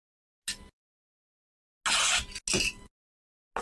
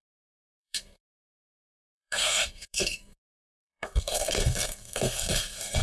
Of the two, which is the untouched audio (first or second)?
first